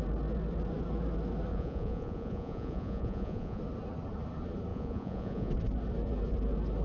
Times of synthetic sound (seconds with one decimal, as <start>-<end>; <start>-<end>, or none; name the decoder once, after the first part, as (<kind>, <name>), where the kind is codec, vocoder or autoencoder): 1.5-3.6 (vocoder, Vocos); 4.7-5.5

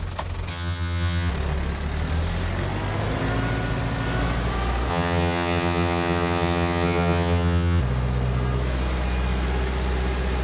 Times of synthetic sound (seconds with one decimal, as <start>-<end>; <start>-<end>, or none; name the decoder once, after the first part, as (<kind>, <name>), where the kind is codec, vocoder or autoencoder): 0.5-1.3 (vocoder, HiFi-GAN); 4.9-7.8

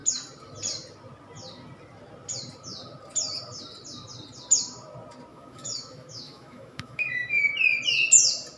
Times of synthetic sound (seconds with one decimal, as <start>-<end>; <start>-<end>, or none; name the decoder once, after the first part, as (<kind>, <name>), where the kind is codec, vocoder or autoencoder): 5.3-7.4 (autoencoder, DAC-VAE)

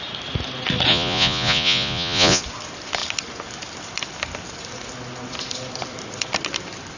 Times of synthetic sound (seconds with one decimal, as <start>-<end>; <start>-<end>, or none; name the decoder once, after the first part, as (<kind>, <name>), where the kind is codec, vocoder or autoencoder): 0.9-2.4 (vocoder, Vocos)